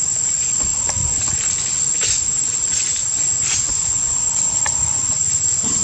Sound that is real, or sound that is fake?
real